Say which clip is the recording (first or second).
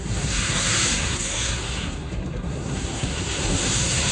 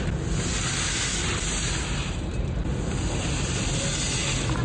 second